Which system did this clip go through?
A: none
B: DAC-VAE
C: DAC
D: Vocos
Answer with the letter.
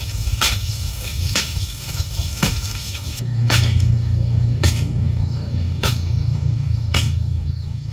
C